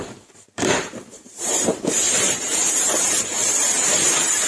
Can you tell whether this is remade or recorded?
remade